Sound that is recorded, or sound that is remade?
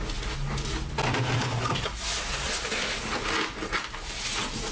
recorded